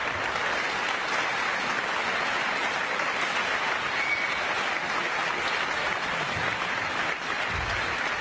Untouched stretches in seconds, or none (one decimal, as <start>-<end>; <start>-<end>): 0.0-8.2